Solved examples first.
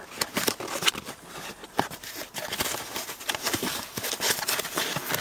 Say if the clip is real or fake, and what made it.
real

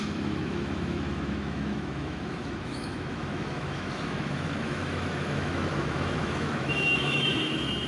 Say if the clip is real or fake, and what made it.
fake, autoencoder, DAC-VAE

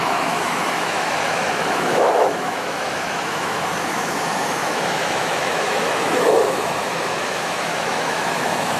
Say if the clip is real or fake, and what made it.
fake, autoencoder, DAC-VAE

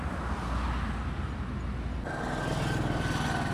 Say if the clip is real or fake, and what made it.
real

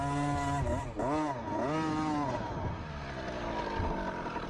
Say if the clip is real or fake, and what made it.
real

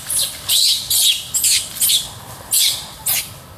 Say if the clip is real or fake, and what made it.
real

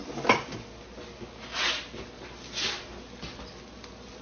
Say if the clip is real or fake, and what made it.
real